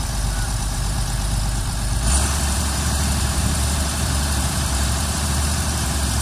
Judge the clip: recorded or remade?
remade